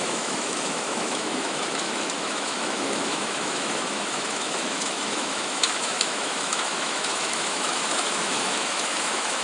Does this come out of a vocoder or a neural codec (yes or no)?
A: yes